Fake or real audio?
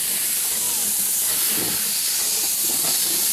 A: fake